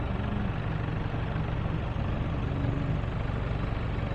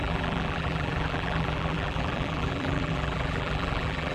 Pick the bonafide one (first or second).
first